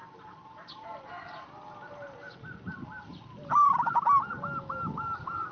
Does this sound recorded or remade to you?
recorded